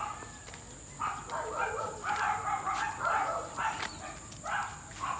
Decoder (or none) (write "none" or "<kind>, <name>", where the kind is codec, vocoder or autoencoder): none